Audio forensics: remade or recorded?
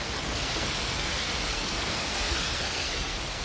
remade